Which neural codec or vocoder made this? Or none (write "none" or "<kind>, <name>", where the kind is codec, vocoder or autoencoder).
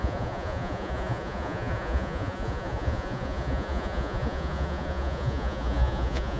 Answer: vocoder, Vocos